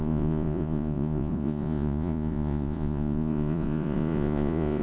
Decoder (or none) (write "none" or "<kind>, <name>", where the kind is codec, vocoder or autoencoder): vocoder, Vocos